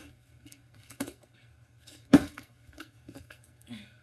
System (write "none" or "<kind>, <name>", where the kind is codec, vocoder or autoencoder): codec, SNAC